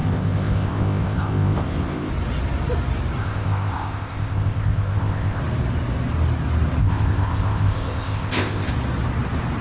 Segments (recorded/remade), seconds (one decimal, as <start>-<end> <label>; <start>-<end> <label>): 0.0-2.1 remade; 2.1-3.2 recorded; 3.2-5.4 remade; 5.4-6.8 recorded; 6.8-8.7 remade; 8.7-9.6 recorded